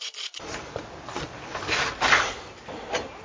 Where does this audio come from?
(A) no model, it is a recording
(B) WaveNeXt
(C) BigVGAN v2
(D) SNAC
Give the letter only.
A